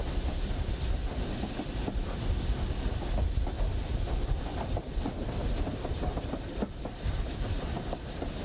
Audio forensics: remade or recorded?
recorded